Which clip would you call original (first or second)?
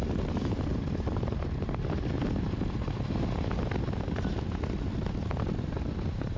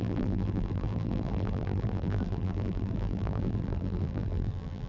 first